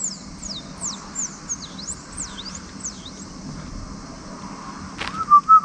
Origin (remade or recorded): recorded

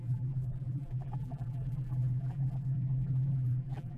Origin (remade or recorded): remade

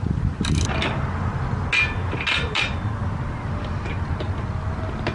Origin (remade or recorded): recorded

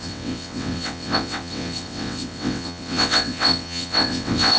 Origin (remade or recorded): remade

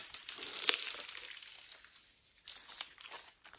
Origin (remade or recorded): recorded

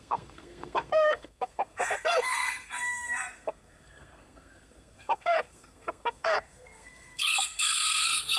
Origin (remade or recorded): remade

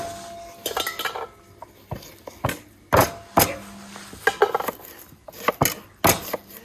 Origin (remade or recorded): recorded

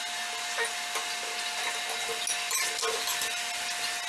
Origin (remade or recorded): recorded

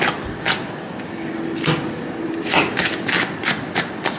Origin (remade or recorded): recorded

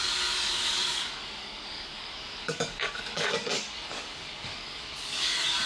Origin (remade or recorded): remade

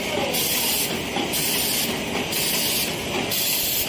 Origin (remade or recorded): recorded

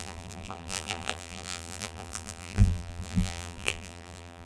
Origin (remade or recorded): remade